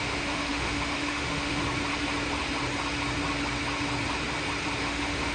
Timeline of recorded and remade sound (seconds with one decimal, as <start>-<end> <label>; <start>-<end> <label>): 0.0-1.6 remade; 1.6-4.8 recorded; 4.8-5.3 remade